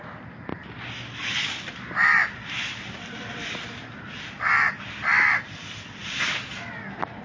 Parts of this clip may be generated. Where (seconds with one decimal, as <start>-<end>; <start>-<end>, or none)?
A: none